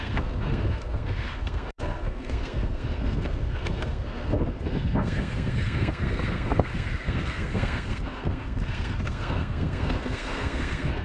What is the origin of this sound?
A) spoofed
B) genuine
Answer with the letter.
A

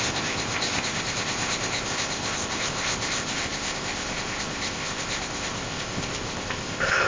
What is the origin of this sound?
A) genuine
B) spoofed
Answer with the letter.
B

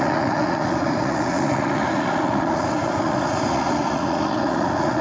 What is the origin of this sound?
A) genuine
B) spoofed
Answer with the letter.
B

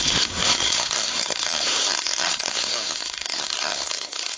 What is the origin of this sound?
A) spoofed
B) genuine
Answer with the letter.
A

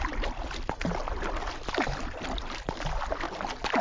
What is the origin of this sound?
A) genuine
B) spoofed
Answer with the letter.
A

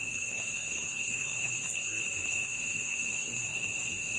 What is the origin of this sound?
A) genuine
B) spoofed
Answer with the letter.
B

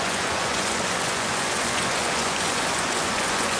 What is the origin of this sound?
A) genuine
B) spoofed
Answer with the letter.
B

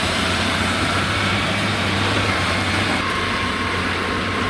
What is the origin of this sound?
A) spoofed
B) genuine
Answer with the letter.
A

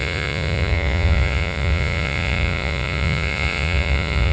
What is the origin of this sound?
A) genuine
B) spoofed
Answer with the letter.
B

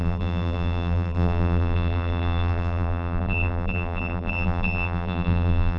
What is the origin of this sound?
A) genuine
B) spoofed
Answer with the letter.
B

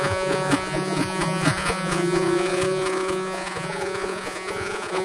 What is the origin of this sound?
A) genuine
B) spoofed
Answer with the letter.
B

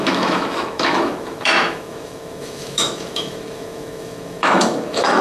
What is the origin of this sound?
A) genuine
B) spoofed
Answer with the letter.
B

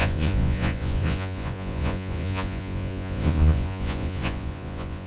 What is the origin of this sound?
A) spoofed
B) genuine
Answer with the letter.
A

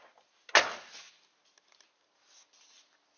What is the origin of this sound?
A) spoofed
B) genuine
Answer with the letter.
B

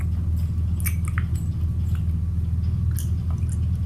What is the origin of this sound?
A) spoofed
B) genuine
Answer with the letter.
B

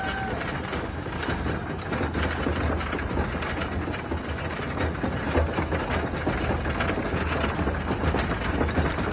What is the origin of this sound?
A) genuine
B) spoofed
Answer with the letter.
A